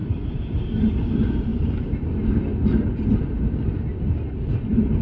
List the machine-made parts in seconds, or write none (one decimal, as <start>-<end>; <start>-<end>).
1.1-5.0